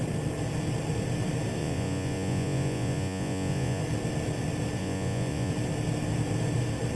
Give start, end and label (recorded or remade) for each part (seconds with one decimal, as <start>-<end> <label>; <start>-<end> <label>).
0.0-1.6 recorded; 1.6-3.8 remade; 3.8-4.8 recorded; 4.8-5.5 remade; 5.5-7.0 recorded

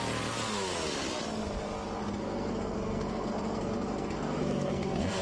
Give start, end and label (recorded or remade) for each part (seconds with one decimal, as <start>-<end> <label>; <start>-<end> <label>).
0.0-2.0 recorded; 2.0-5.2 remade

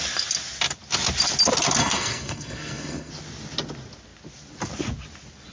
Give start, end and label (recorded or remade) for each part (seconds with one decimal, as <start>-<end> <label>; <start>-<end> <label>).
0.0-1.8 recorded; 1.8-3.1 remade; 3.1-5.5 recorded

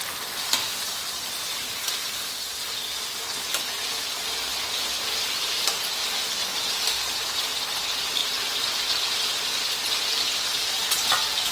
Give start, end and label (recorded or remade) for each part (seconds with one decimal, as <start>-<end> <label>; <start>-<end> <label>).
0.0-6.5 recorded; 6.5-7.3 remade; 7.3-11.5 recorded